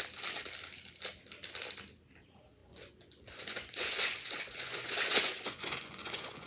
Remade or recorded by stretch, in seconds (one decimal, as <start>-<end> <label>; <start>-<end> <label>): 0.0-2.6 recorded; 2.6-6.5 remade